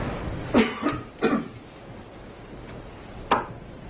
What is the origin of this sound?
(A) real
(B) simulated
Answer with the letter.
A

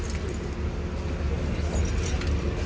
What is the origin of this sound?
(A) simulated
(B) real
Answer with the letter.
B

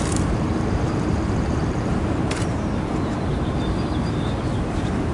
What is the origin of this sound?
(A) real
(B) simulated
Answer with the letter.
B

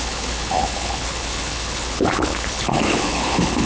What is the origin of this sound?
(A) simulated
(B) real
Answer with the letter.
A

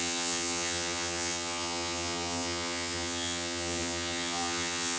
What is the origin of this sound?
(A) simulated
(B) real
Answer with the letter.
A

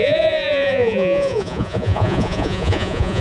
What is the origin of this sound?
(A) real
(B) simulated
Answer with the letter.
B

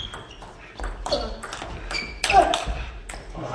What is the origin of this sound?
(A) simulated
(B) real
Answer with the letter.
B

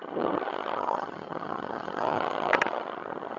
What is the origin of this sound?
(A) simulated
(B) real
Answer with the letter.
A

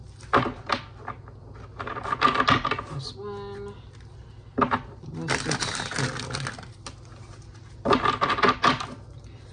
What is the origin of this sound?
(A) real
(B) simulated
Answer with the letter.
A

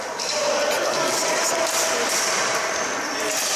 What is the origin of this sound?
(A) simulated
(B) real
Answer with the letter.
B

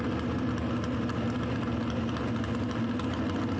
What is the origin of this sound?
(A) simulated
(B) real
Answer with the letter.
B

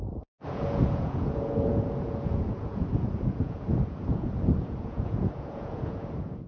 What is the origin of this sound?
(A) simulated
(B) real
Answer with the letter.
A